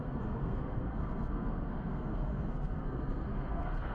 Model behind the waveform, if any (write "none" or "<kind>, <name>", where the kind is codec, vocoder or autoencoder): codec, SNAC